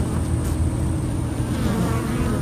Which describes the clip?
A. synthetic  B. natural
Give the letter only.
B